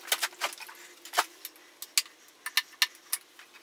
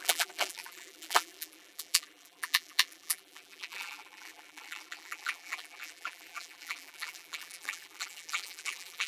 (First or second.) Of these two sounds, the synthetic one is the second